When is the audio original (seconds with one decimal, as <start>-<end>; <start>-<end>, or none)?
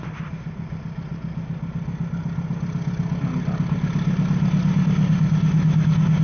0.0-6.2